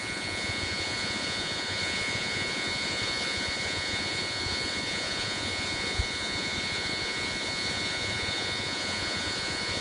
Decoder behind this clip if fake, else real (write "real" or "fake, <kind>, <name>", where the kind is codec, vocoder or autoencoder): fake, vocoder, Vocos